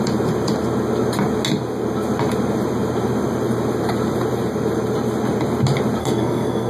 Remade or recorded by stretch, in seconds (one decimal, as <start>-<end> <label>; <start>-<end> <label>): 0.0-6.0 recorded; 6.0-6.7 remade

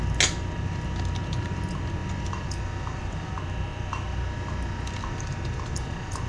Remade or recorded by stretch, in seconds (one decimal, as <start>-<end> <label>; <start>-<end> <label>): 0.0-2.0 recorded; 2.0-3.3 remade; 3.3-3.7 recorded; 3.7-6.3 remade